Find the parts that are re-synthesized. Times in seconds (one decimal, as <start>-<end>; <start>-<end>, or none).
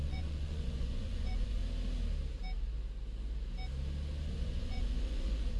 0.0-1.6; 4.3-5.6